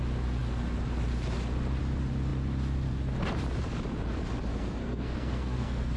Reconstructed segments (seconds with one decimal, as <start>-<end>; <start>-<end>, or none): 4.5-6.0

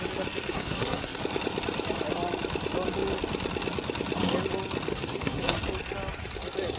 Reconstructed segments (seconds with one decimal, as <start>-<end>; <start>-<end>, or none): 0.5-1.2; 4.9-5.6